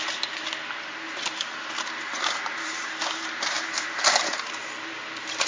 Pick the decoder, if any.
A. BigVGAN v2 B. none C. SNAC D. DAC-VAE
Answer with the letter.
A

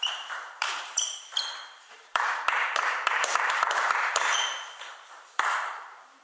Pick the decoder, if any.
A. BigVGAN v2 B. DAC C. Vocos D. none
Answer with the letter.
A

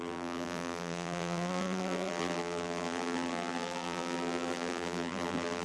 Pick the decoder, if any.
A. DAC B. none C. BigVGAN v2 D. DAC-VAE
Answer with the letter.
C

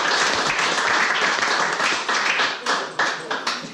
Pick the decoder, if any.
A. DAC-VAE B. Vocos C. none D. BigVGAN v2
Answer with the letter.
D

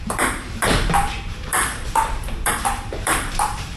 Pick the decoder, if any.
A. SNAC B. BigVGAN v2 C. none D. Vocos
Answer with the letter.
B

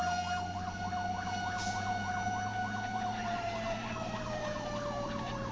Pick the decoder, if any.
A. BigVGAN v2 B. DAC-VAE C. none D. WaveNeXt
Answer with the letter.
A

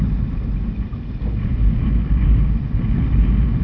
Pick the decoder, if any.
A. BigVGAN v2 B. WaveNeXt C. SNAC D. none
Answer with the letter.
D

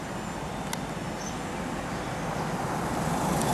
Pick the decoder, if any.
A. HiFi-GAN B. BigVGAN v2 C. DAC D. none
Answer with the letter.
D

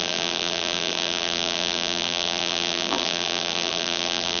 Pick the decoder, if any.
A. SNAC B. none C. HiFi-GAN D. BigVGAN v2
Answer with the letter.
D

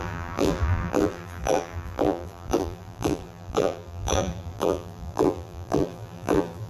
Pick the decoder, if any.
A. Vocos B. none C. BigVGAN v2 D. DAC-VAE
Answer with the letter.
C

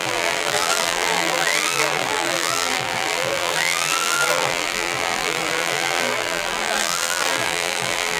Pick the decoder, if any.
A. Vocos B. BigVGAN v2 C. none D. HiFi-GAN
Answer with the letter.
B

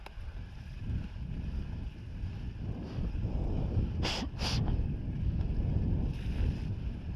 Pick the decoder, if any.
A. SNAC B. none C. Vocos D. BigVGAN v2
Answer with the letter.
B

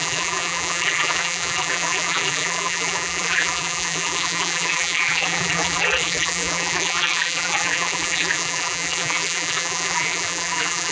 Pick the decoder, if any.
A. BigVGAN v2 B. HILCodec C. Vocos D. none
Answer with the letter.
A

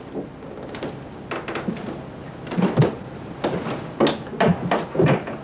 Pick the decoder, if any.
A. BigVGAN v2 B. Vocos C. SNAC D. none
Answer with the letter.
D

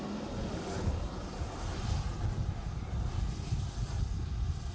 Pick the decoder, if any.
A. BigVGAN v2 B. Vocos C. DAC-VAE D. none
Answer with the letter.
D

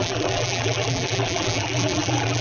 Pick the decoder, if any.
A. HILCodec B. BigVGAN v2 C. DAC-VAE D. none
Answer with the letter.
B